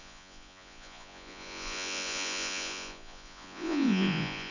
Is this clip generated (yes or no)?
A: yes